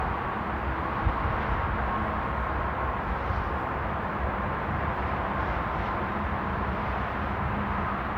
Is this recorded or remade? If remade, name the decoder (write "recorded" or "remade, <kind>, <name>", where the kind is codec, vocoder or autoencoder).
recorded